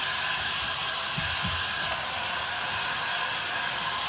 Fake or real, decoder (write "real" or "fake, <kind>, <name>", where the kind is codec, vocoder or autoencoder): real